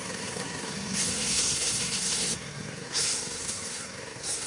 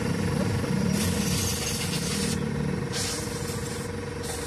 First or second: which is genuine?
second